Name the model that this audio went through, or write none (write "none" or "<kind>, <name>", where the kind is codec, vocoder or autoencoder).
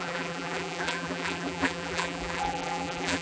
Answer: vocoder, BigVGAN v2